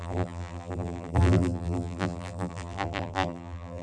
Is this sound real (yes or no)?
no